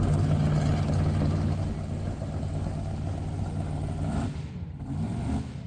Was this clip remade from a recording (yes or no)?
no